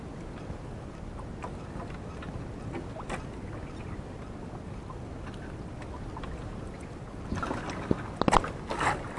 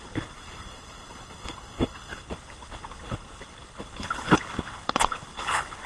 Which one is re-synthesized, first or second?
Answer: second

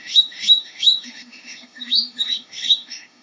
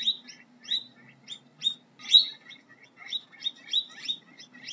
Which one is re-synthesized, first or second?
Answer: first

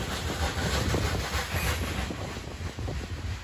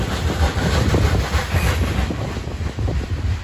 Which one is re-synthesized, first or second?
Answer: second